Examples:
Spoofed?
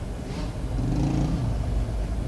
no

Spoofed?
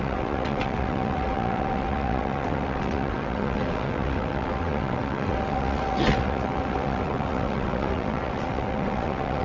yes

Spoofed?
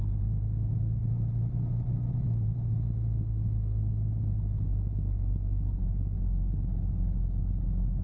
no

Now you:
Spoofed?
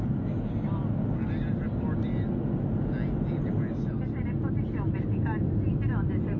no